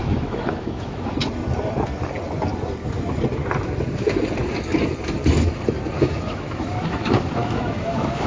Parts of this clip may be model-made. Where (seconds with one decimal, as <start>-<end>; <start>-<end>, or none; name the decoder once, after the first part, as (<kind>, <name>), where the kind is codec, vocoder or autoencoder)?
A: 0.0-1.2 (autoencoder, DAC-VAE); 6.0-8.3